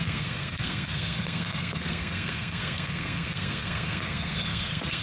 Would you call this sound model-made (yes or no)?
yes